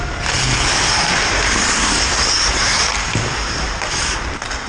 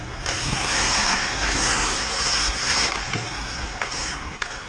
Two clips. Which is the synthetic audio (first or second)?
second